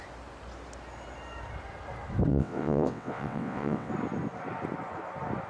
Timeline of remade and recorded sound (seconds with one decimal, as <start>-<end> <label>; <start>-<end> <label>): 0.0-2.3 recorded; 2.3-3.9 remade; 3.9-5.5 recorded